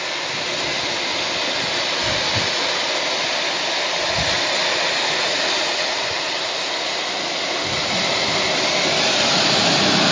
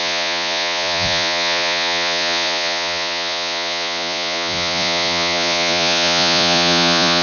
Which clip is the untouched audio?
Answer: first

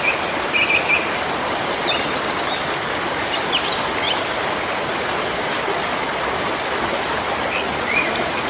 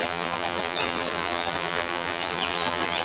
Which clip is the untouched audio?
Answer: first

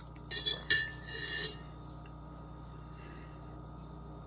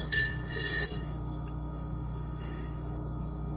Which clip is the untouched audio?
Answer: first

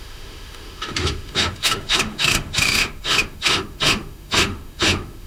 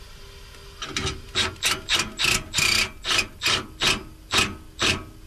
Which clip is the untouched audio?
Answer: second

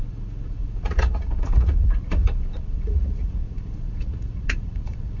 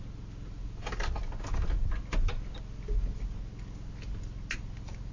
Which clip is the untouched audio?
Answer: second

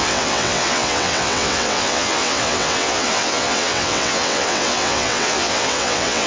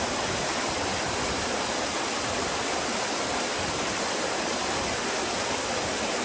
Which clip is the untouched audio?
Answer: second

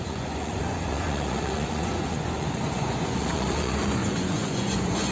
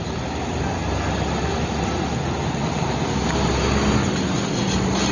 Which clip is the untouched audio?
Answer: second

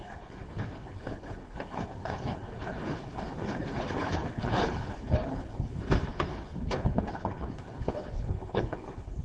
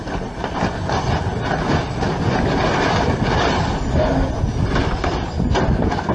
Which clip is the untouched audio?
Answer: second